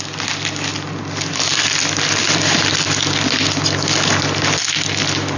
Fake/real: real